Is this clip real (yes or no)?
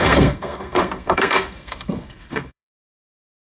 no